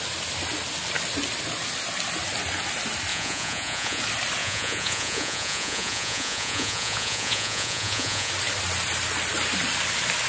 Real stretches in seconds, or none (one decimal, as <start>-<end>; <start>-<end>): 0.0-3.1; 4.0-4.4; 8.3-10.3

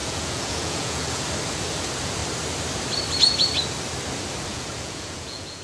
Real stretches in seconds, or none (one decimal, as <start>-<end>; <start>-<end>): 1.2-4.5

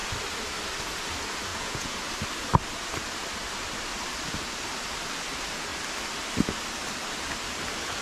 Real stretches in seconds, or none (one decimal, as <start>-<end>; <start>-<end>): 0.0-1.5; 2.0-8.0

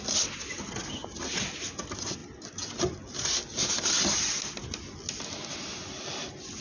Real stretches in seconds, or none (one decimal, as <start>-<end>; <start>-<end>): 0.0-6.6